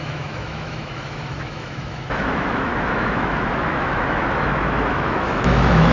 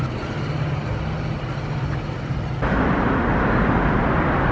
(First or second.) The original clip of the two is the second